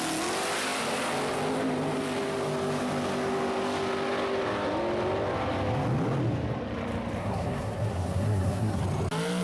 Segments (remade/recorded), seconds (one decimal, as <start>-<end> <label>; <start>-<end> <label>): 0.0-7.2 recorded; 7.2-8.8 remade; 8.8-9.4 recorded